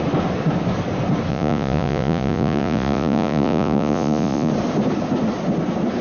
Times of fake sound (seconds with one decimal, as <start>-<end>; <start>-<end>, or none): 1.3-4.5

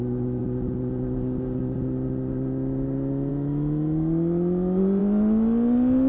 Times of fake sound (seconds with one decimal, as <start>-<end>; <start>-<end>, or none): none